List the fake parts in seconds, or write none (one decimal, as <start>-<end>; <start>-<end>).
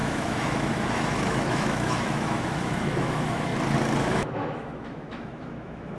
0.0-3.5; 4.0-6.0